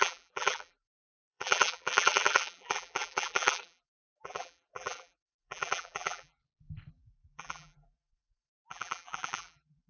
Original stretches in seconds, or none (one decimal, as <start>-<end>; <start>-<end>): 6.4-6.9